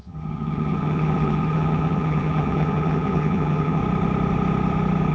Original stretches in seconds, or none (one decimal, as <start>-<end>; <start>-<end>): 3.8-5.1